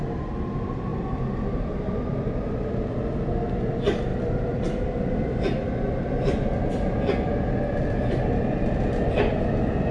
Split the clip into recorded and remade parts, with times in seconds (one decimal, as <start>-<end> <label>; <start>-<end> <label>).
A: 0.0-9.9 recorded